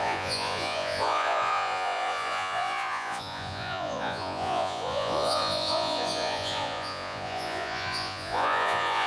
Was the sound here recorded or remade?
remade